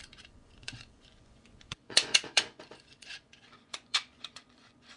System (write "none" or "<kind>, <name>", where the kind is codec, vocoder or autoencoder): vocoder, Vocos